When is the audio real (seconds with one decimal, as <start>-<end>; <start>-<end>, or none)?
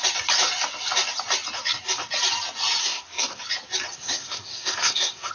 0.0-2.8; 3.4-3.9